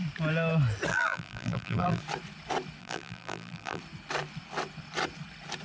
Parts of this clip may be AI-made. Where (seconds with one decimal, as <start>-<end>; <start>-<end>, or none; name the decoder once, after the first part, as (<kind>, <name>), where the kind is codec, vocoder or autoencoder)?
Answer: 0.9-2.0 (vocoder, BigVGAN v2); 2.8-3.8